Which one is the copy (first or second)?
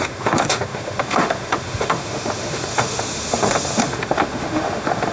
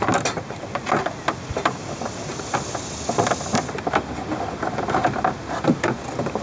first